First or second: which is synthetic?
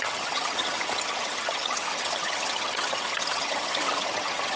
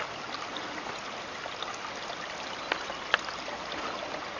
first